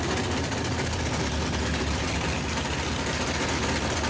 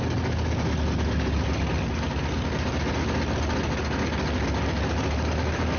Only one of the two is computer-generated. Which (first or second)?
first